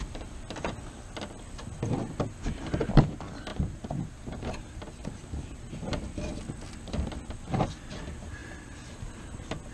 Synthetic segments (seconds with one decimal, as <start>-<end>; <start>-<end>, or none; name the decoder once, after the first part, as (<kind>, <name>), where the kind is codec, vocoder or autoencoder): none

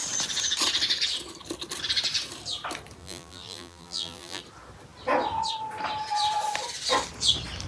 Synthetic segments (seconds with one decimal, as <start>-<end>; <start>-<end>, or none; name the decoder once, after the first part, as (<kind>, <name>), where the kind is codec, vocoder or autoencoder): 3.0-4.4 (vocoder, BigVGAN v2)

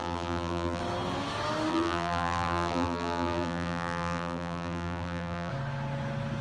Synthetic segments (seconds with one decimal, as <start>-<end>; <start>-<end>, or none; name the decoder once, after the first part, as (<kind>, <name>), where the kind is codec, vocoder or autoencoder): 0.0-0.8 (vocoder, BigVGAN v2); 1.7-5.5

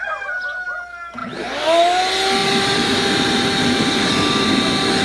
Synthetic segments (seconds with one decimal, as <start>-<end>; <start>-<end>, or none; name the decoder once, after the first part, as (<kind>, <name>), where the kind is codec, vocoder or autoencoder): 1.2-2.0 (vocoder, BigVGAN v2); 2.4-4.3